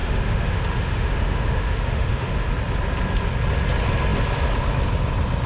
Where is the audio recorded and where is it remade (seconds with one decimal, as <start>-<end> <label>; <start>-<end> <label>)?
0.0-2.5 remade; 2.5-5.5 recorded